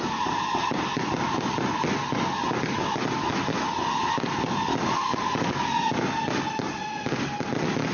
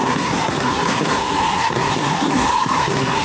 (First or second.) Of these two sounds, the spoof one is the second